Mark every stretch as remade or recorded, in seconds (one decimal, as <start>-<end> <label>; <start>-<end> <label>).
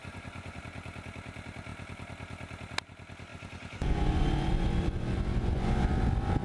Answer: 0.0-0.6 remade; 0.6-3.3 recorded; 3.3-6.0 remade; 6.0-6.4 recorded